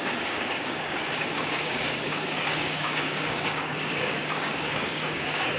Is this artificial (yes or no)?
yes